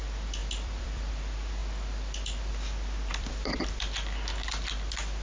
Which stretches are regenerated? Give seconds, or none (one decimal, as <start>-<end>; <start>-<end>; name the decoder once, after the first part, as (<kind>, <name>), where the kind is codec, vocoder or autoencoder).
0.4-1.1 (vocoder, BigVGAN v2); 1.6-2.5; 3.1-3.6